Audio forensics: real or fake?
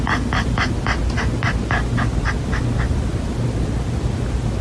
real